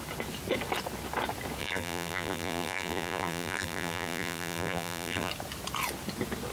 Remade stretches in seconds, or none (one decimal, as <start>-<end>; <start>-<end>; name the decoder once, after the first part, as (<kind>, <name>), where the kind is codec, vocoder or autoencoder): 1.6-5.3 (vocoder, BigVGAN v2)